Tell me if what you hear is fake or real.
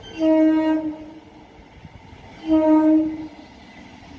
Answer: real